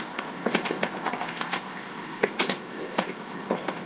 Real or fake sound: fake